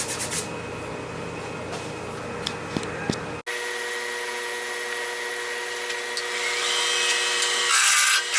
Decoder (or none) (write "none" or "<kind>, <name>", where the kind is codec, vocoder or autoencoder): none